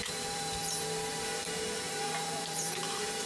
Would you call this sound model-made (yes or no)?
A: yes